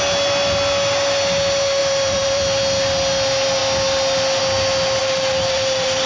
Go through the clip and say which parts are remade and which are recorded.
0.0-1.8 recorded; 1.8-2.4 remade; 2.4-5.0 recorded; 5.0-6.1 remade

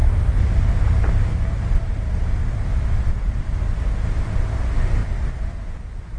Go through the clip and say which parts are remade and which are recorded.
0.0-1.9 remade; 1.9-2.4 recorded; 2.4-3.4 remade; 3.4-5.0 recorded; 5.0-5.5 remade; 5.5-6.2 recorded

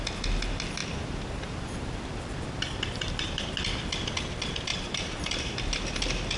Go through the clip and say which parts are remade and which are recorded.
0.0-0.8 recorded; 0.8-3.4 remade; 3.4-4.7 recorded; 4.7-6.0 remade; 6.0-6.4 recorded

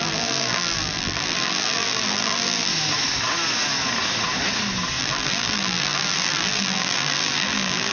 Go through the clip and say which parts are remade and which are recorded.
0.0-2.7 remade; 2.7-5.0 recorded; 5.0-7.9 remade

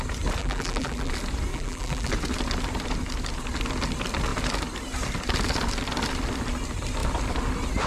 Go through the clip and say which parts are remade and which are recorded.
0.0-0.4 recorded; 0.4-1.1 remade; 1.1-1.5 recorded; 1.5-2.1 remade; 2.1-7.9 recorded

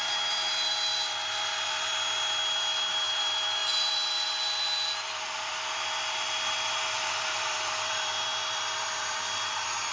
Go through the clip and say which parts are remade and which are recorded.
0.0-1.9 remade; 1.9-2.9 recorded; 2.9-9.9 remade

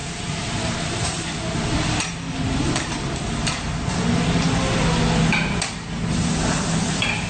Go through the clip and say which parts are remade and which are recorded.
0.0-2.9 remade; 2.9-7.3 recorded